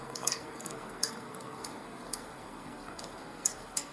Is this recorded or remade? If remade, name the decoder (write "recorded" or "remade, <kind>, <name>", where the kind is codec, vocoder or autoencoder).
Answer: remade, codec, SNAC